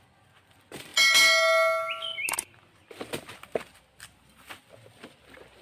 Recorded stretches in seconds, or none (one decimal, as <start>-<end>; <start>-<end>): 0.0-5.6